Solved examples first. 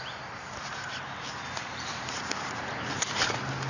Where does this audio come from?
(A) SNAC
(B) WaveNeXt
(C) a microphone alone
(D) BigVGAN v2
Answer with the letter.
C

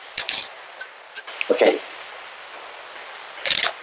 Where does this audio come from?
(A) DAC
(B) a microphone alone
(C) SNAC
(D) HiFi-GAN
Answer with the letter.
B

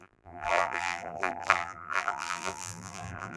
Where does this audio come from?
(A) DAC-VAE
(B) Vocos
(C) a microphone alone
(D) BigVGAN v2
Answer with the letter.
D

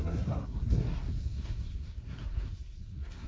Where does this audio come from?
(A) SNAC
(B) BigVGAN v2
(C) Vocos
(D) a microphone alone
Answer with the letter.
A